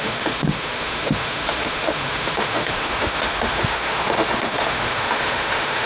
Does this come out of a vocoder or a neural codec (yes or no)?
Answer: yes